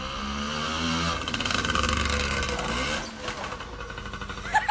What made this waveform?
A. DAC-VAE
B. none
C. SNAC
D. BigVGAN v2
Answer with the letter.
B